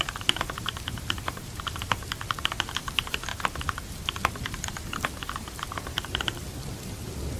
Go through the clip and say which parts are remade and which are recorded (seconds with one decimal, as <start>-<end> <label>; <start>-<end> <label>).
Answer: 0.0-3.3 remade; 3.3-4.4 recorded; 4.4-6.4 remade; 6.4-7.4 recorded